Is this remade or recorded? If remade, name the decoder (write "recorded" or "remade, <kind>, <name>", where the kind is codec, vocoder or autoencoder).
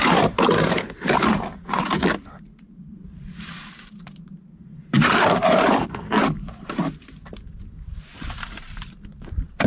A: remade, vocoder, BigVGAN v2